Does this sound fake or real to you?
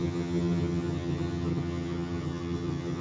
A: fake